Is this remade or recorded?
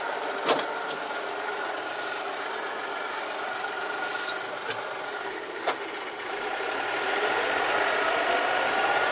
recorded